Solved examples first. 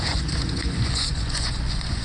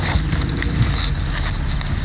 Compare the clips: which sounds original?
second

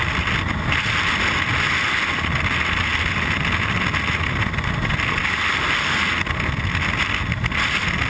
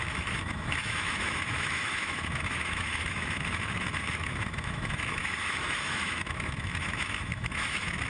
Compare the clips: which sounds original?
first